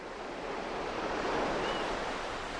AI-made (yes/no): no